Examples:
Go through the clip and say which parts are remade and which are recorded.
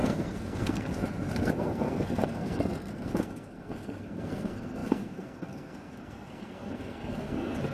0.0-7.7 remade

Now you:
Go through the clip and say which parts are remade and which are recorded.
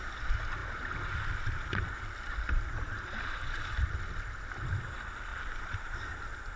0.0-5.3 recorded; 5.3-6.6 remade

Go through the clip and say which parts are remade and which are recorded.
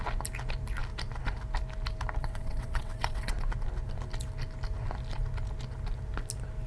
0.0-2.2 recorded; 2.2-3.3 remade; 3.3-6.7 recorded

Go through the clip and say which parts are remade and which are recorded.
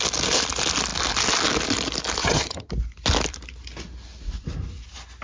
0.0-2.2 recorded; 2.2-2.7 remade; 2.7-5.2 recorded